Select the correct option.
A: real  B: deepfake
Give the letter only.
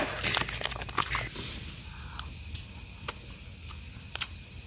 A